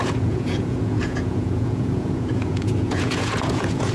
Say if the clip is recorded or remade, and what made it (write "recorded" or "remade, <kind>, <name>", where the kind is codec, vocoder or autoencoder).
remade, vocoder, Vocos